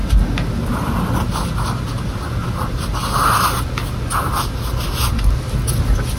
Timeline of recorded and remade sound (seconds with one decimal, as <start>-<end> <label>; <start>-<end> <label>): 0.0-6.2 recorded